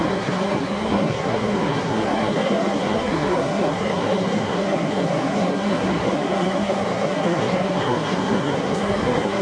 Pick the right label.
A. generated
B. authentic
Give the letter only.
A